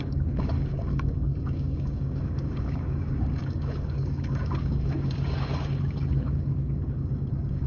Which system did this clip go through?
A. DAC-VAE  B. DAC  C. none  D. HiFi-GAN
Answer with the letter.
B